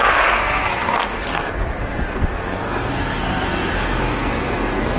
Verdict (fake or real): fake